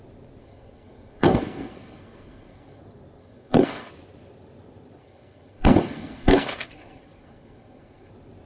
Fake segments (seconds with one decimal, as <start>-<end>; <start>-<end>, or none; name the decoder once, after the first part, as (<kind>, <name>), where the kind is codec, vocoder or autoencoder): 0.4-2.8 (codec, SNAC); 3.2-3.9; 5.0-8.1